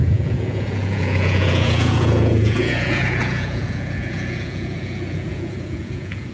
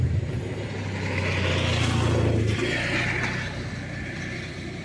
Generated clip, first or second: first